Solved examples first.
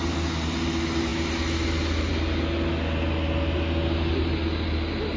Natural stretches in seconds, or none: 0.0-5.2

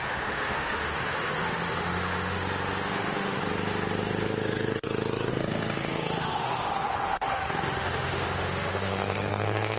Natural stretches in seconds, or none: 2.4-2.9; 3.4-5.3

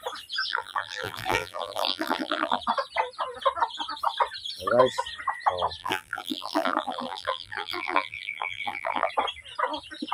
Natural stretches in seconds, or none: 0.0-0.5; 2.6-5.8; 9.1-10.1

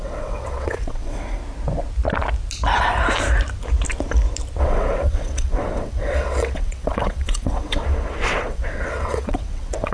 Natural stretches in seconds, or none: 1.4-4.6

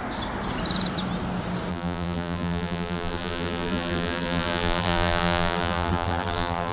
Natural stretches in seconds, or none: 0.0-1.7

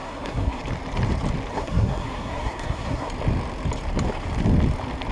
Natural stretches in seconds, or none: 0.6-1.5; 3.1-5.1